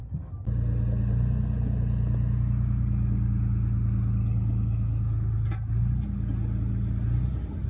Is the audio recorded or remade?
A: recorded